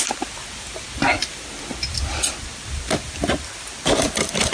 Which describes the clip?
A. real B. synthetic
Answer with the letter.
A